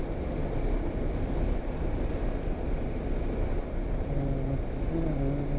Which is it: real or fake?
real